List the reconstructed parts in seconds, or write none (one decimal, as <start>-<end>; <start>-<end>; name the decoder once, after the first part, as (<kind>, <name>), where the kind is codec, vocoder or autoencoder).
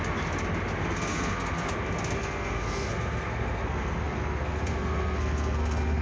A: 0.8-1.7 (codec, SNAC); 2.2-6.0